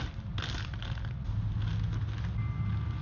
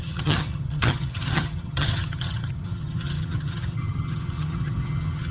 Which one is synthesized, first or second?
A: second